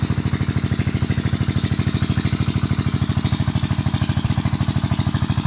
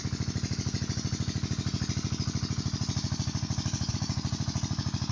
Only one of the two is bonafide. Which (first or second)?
first